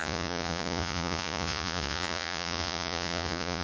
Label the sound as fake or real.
fake